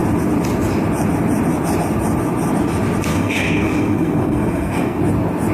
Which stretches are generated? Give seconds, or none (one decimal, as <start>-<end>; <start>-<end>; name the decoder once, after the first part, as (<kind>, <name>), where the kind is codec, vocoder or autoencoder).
3.1-5.0 (codec, SNAC)